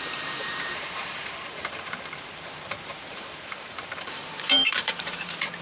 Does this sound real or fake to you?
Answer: fake